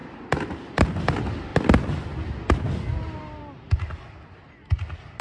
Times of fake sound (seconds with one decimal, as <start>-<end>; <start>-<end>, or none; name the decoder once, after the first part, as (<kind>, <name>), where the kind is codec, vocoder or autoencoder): 0.0-1.0 (vocoder, BigVGAN v2)